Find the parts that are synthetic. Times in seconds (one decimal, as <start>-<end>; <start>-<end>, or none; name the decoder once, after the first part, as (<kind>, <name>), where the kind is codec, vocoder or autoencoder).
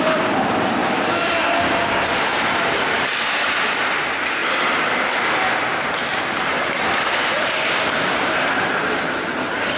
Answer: 0.0-4.4 (vocoder, BigVGAN v2); 6.3-9.8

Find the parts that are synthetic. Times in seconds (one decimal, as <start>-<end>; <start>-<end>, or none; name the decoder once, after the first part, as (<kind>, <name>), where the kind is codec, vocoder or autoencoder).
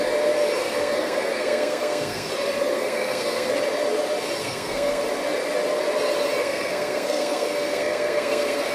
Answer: 0.6-2.3 (codec, SNAC); 2.7-3.5; 4.4-5.0; 6.4-8.7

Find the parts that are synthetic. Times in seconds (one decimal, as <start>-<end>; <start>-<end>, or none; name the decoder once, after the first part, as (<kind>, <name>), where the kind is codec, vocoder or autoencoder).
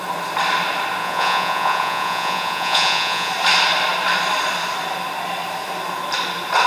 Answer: 1.0-3.3 (vocoder, Vocos)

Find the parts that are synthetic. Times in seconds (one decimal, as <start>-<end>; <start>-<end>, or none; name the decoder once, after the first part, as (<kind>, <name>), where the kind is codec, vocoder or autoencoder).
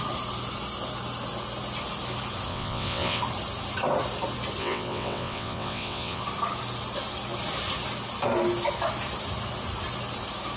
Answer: 2.5-3.2 (vocoder, WaveNeXt); 4.6-6.2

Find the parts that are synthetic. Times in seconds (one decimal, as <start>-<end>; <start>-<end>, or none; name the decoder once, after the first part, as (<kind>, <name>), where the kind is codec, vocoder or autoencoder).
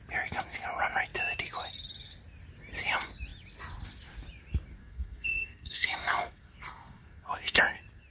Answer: 4.8-7.6 (codec, SNAC)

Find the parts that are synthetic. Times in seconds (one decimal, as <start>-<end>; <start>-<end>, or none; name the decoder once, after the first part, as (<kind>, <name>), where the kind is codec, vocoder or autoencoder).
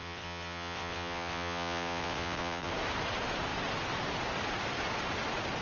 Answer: 0.0-2.7 (vocoder, WaveNeXt)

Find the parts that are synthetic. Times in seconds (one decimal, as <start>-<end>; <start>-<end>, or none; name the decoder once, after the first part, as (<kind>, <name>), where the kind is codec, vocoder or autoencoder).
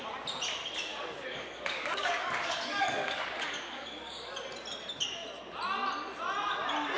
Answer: 0.9-4.3 (codec, DAC)